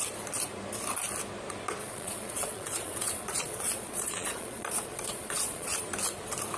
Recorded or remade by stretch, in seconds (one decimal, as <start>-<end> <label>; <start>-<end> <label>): 0.0-1.8 recorded; 1.8-5.8 remade; 5.8-6.6 recorded